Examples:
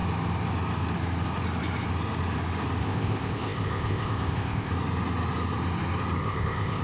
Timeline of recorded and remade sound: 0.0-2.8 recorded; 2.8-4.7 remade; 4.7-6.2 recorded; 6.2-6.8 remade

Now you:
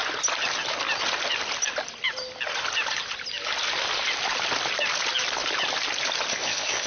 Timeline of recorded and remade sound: 0.0-6.3 recorded; 6.3-6.9 remade

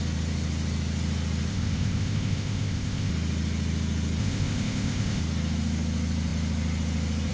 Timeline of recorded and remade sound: 0.0-1.5 recorded; 1.5-3.1 remade; 3.1-4.2 recorded; 4.2-5.2 remade; 5.2-7.3 recorded

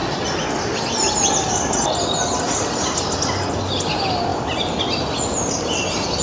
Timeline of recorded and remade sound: 0.0-6.2 recorded

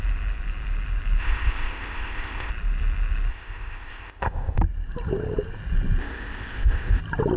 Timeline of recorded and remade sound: 0.0-1.2 recorded; 1.2-2.5 remade; 2.5-3.3 recorded; 3.3-4.6 remade; 4.6-6.0 recorded; 6.0-7.0 remade; 7.0-7.4 recorded

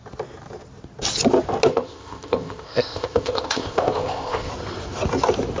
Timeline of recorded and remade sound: 0.0-1.7 recorded; 1.7-4.5 remade; 4.5-5.6 recorded

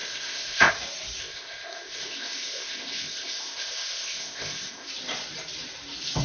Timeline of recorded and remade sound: 0.0-0.7 remade; 0.7-1.2 recorded; 1.2-4.9 remade; 4.9-6.2 recorded

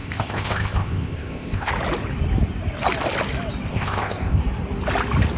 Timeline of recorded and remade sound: 0.0-1.7 remade; 1.7-3.7 recorded; 3.7-4.4 remade; 4.4-5.4 recorded